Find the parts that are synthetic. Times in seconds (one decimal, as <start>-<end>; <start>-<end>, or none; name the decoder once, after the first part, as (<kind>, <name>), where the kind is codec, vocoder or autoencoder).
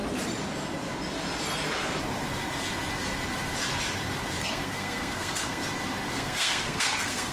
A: 4.4-5.6 (codec, SNAC); 6.1-7.3